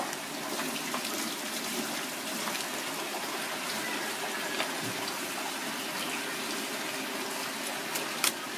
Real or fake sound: real